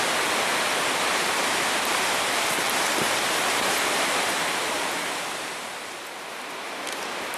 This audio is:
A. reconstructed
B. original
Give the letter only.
B